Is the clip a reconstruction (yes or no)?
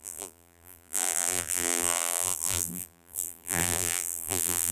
yes